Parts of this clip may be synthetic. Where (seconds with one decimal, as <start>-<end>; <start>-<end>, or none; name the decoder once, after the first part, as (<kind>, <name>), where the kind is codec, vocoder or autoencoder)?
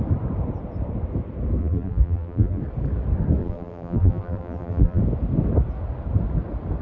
1.6-2.6 (vocoder, BigVGAN v2); 3.4-5.0